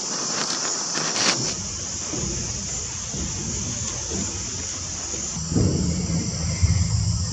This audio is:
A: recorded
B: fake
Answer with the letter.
A